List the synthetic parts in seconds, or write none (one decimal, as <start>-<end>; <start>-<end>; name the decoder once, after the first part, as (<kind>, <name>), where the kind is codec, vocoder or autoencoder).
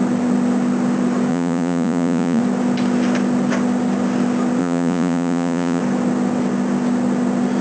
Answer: 1.3-2.4 (vocoder, Vocos); 4.6-5.8